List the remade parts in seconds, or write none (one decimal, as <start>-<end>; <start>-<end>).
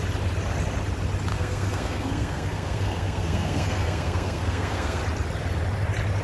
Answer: 1.3-5.0